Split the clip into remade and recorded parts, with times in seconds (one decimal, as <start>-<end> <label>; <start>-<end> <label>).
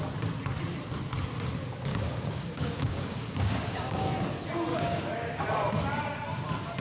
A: 0.0-1.9 recorded; 1.9-4.1 remade; 4.1-4.7 recorded; 4.7-5.4 remade; 5.4-6.8 recorded